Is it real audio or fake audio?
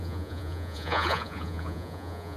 fake